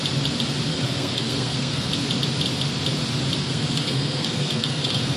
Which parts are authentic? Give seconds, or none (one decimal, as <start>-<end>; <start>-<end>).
0.0-0.7; 1.9-3.4